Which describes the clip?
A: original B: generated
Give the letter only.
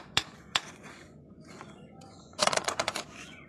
B